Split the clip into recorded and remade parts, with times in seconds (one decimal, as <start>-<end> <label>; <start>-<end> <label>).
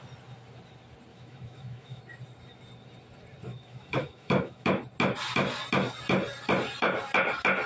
0.0-1.1 recorded; 1.1-2.0 remade; 2.0-3.5 recorded; 3.5-4.7 remade; 4.7-7.7 recorded